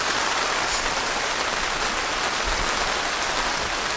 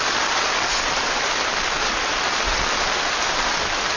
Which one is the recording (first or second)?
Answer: first